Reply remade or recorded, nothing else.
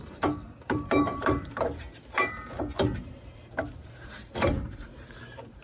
remade